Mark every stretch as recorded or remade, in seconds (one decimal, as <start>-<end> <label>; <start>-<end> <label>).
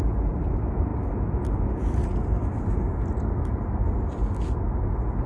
0.0-5.3 recorded